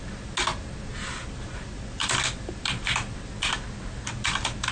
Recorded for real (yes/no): yes